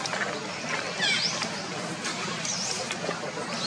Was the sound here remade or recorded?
recorded